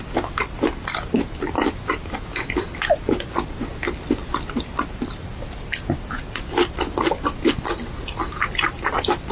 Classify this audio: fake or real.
real